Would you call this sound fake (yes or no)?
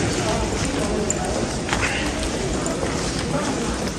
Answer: no